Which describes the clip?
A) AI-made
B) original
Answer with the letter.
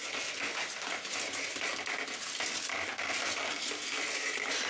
B